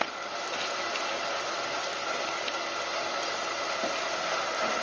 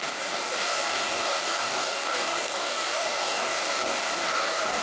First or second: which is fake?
second